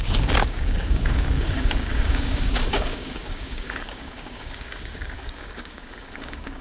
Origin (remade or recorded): remade